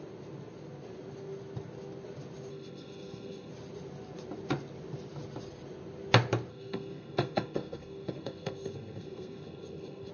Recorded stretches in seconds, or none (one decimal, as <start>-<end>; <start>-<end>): 0.0-2.5; 3.5-6.5